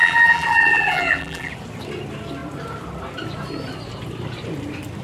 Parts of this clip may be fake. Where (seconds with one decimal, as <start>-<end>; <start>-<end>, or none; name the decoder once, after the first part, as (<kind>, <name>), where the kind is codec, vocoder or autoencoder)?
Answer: 0.0-1.5 (vocoder, BigVGAN v2)